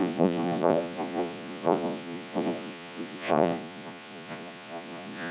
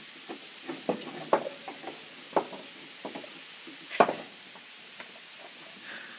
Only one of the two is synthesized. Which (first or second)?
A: first